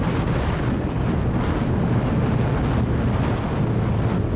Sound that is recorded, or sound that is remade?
recorded